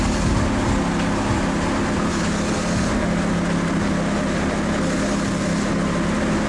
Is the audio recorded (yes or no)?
yes